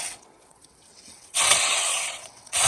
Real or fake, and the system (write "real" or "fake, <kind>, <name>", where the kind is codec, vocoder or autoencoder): fake, vocoder, WaveNeXt